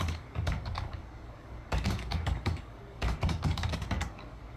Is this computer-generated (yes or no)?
yes